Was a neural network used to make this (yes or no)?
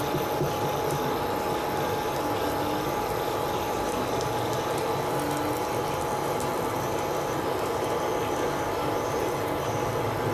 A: no